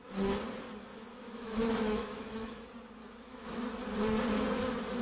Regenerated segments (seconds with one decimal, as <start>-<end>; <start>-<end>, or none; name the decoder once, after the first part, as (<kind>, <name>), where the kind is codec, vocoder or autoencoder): 0.9-2.6 (autoencoder, DAC-VAE); 3.0-3.7